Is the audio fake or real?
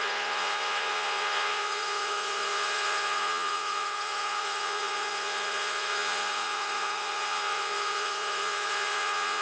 fake